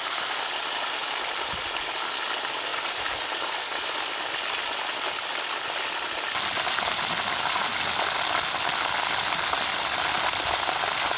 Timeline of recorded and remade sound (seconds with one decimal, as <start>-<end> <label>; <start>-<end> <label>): 0.0-2.7 recorded; 2.7-3.9 remade; 3.9-11.2 recorded